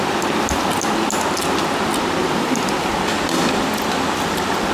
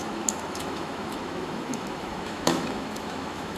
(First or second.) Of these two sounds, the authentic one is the first